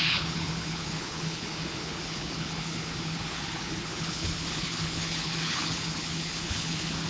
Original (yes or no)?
no